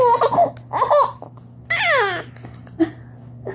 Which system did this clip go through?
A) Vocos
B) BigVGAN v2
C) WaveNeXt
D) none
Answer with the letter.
D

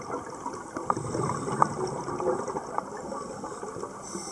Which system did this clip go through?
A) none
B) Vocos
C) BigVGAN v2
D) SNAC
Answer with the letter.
A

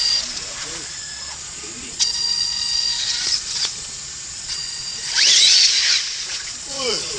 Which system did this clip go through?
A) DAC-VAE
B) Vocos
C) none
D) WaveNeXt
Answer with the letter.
B